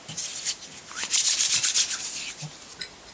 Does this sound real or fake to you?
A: real